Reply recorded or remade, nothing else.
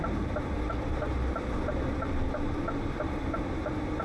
recorded